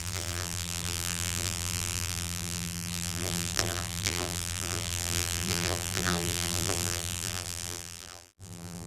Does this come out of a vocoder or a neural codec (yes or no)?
yes